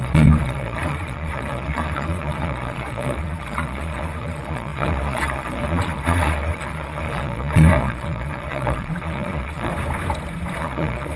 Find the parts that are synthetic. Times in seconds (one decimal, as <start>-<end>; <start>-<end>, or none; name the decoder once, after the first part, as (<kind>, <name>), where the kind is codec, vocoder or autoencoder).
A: 0.0-9.7 (vocoder, Vocos); 10.6-11.2